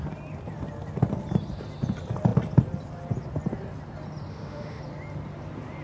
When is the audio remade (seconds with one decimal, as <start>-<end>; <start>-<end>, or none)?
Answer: 4.3-4.8